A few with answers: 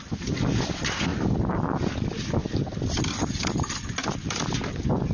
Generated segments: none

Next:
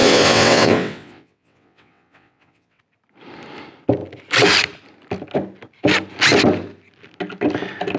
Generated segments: 0.0-2.8 (vocoder, WaveNeXt)